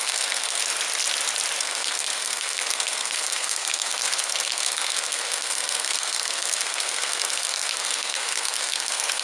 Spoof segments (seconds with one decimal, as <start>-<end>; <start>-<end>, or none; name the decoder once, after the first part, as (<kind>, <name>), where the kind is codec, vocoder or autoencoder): 0.0-0.6 (codec, SNAC); 1.6-9.2